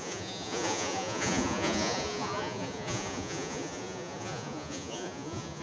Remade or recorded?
remade